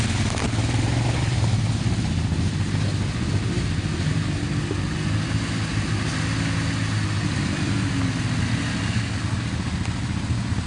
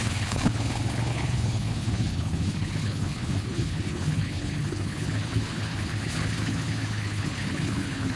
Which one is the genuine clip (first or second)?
first